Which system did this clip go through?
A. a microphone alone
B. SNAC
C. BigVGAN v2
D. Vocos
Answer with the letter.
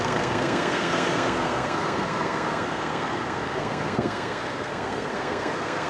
B